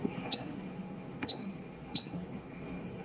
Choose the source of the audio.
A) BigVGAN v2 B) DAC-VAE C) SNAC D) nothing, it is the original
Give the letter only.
C